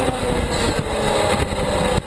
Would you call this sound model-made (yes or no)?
no